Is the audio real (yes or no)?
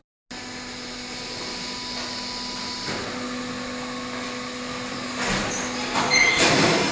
yes